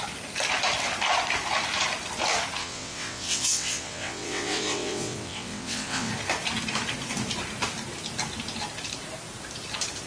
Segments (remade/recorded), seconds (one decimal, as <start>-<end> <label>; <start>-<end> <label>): 0.0-2.6 recorded; 2.6-6.1 remade; 6.1-10.1 recorded